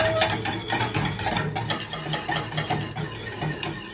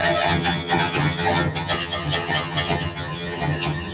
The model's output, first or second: second